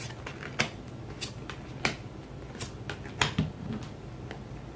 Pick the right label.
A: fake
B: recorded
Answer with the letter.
B